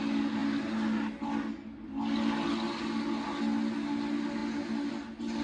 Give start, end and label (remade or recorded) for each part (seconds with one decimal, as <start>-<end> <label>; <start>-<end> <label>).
0.0-5.4 recorded